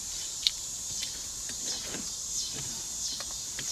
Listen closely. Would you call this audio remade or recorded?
remade